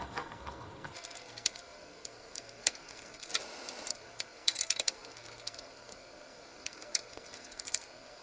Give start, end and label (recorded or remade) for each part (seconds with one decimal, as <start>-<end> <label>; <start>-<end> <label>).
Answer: 0.0-3.3 remade; 3.3-3.9 recorded; 3.9-8.2 remade